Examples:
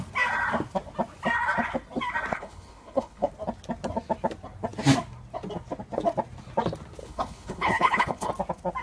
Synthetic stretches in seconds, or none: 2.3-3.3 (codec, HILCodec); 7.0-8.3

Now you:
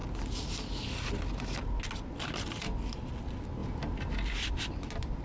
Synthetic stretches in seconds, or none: none

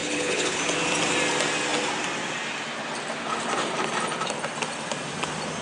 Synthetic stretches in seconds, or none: 0.0-0.6 (codec, HILCodec)